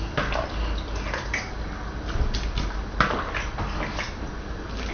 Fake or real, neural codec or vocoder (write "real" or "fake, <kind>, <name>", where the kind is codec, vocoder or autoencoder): real